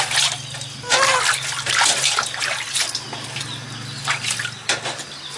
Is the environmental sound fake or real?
real